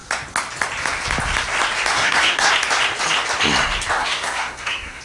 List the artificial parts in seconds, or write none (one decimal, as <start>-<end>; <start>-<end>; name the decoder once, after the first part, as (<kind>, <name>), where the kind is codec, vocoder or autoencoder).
1.9-2.5 (codec, SNAC); 4.0-5.0